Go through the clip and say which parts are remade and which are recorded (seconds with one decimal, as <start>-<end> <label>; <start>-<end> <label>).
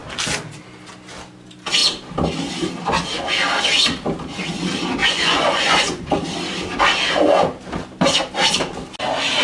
0.0-5.0 recorded; 5.0-6.1 remade; 6.1-9.4 recorded